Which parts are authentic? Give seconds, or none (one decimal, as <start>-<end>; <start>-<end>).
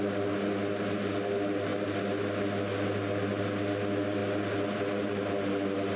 0.0-6.0